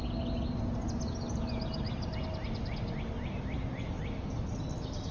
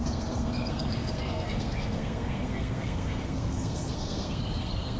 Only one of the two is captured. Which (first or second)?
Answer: first